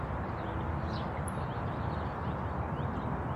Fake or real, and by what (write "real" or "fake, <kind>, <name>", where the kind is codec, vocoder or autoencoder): real